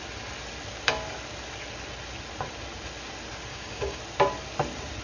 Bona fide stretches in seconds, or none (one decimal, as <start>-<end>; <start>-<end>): 0.0-3.5; 4.0-5.0

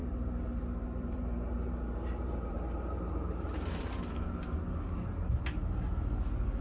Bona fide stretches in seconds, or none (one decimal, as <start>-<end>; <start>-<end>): 4.0-6.6

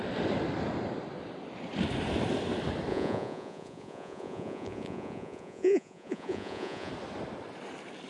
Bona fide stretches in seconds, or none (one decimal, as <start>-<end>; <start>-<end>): 0.0-2.9; 6.9-8.1

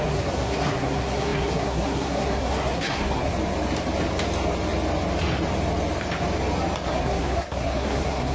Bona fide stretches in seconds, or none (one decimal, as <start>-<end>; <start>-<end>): 3.3-6.9

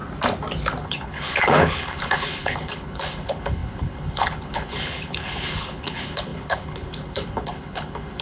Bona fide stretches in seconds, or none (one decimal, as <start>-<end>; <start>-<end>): 0.0-0.8